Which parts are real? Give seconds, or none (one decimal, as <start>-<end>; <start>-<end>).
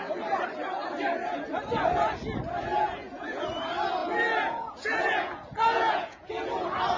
0.0-2.7; 3.5-4.0; 6.5-7.0